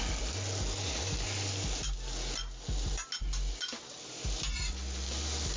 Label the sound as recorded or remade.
recorded